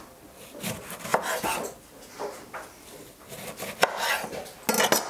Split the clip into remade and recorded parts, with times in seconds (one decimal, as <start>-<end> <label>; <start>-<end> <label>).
0.0-5.1 recorded